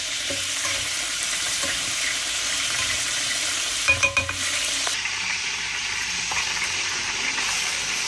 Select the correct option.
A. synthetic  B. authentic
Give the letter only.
A